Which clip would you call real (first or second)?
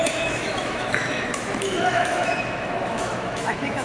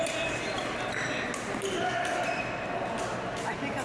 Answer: second